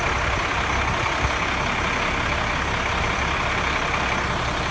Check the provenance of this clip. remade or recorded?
recorded